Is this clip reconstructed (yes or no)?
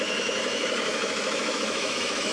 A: yes